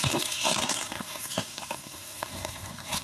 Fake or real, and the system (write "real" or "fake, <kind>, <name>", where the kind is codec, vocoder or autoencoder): fake, codec, SNAC